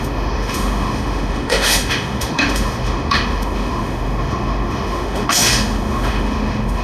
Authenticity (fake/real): fake